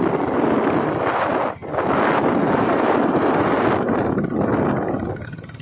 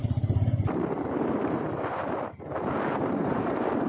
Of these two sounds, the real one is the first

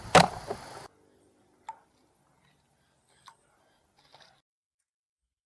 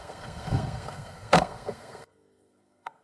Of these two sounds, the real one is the first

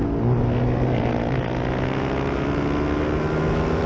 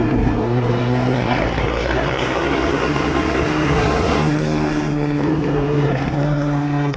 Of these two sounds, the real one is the first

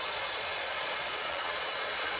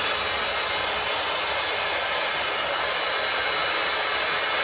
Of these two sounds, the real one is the second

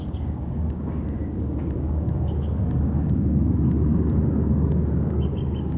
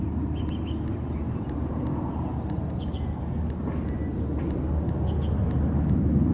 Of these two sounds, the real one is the second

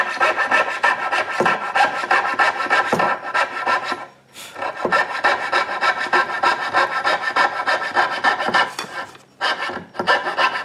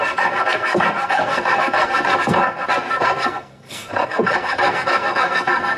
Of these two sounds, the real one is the first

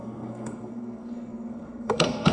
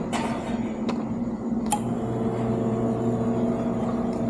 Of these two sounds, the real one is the second